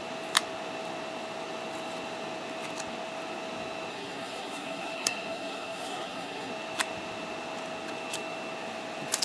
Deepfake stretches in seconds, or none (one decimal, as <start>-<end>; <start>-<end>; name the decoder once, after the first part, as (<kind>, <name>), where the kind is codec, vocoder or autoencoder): 3.9-6.5 (codec, SNAC)